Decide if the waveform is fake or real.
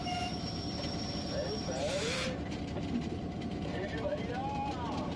fake